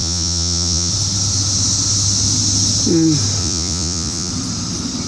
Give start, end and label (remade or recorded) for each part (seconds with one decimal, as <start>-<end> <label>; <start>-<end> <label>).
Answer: 0.0-0.9 remade; 0.9-3.4 recorded; 3.4-4.3 remade; 4.3-5.1 recorded